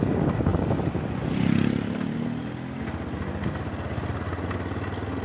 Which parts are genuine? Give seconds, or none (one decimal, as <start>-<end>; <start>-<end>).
0.0-5.2